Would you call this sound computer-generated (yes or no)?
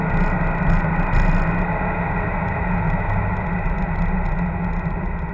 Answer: no